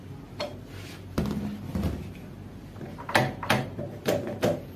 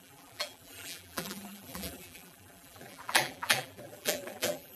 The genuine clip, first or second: first